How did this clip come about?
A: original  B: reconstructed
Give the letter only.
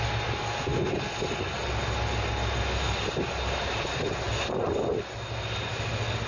A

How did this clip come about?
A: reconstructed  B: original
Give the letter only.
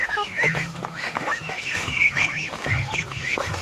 A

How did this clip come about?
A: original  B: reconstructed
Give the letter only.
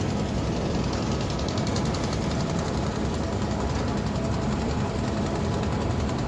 A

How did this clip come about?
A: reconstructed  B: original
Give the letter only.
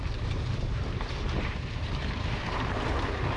A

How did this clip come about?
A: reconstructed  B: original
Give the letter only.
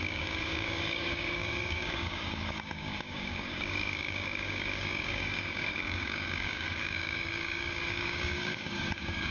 A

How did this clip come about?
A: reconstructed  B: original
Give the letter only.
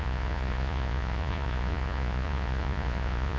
A